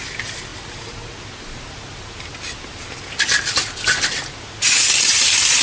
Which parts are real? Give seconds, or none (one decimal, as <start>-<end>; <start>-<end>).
0.0-5.6